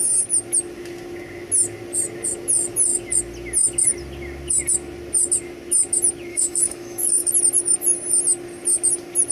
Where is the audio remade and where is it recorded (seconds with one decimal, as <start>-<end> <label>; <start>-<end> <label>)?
0.0-6.3 recorded; 6.3-7.3 remade; 7.3-9.3 recorded